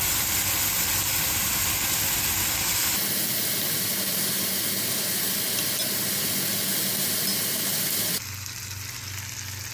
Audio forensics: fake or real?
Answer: real